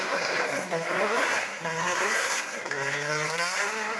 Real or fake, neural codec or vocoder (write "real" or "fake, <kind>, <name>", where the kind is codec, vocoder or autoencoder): fake, codec, SNAC